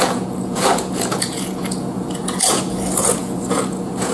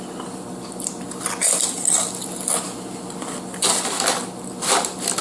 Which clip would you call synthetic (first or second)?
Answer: first